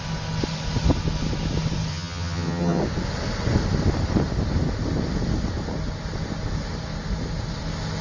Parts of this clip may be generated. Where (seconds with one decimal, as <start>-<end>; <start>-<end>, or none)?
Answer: 1.9-2.8